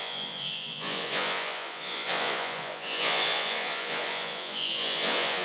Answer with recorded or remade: remade